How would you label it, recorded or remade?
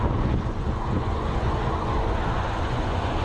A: remade